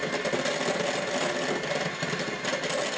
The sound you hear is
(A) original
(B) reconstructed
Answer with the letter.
A